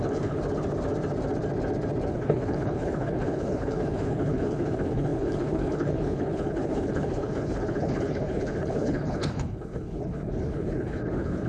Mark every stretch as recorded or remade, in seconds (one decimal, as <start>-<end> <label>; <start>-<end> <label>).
0.0-0.4 remade; 0.4-2.1 recorded; 2.1-11.5 remade